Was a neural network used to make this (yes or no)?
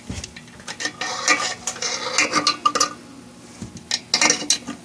no